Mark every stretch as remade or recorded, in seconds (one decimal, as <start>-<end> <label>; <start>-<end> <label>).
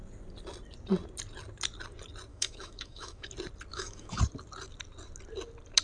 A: 0.0-2.3 recorded; 2.3-3.3 remade; 3.3-3.7 recorded; 3.7-4.2 remade; 4.2-5.8 recorded